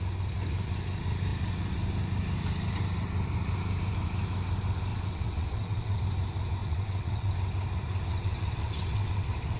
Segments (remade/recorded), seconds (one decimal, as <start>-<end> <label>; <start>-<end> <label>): 0.0-4.9 recorded; 4.9-6.0 remade; 6.0-6.6 recorded; 6.6-7.3 remade; 7.3-8.1 recorded; 8.1-9.6 remade